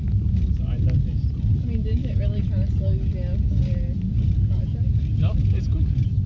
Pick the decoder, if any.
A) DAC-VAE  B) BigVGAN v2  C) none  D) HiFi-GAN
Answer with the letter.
C